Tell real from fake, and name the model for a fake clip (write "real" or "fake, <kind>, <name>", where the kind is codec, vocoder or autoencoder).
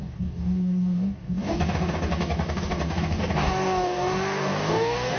fake, codec, DAC